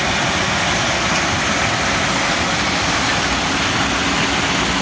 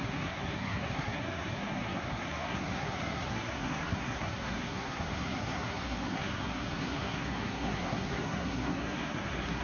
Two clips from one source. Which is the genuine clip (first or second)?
first